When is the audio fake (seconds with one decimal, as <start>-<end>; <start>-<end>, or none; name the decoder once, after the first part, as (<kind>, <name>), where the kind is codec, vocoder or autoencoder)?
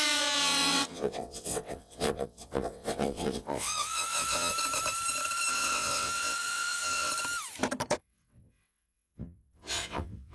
0.0-4.5 (vocoder, WaveNeXt); 5.5-7.1; 8.0-10.3